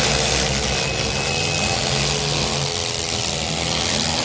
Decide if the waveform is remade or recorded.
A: recorded